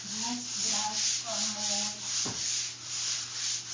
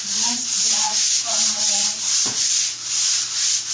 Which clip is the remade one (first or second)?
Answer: second